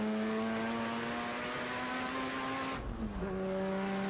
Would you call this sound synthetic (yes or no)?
no